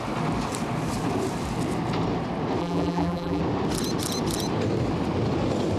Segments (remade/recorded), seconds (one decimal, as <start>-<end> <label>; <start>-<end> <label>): 0.0-2.6 recorded; 2.6-3.4 remade; 3.4-5.8 recorded